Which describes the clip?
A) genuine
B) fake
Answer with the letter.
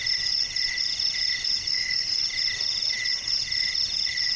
A